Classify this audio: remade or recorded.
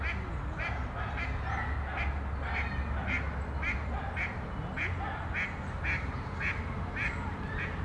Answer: recorded